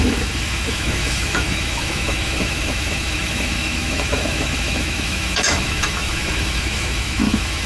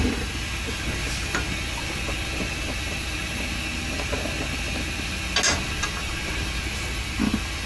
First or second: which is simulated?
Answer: first